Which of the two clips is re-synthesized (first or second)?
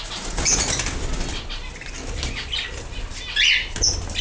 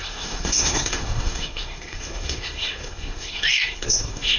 second